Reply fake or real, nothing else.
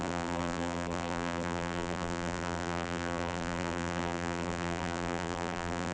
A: fake